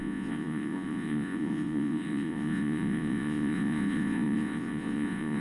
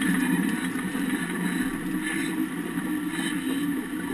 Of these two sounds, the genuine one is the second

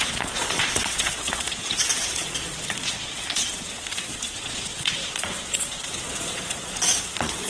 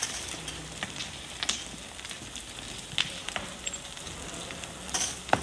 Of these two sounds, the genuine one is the second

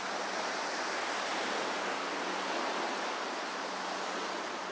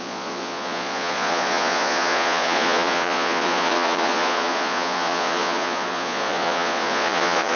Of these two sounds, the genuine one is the first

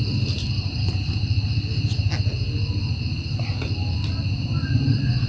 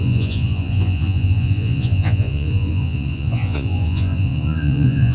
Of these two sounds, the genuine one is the first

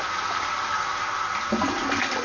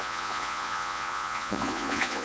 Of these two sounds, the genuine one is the first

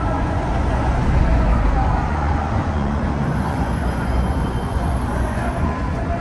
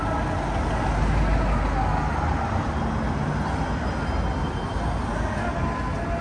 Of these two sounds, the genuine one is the second